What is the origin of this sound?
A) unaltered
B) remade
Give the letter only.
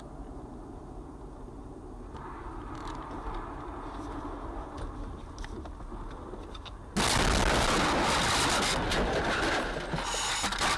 A